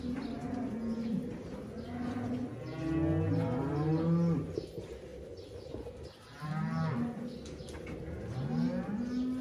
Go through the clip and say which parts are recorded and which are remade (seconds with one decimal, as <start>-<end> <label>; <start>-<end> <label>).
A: 0.0-9.4 recorded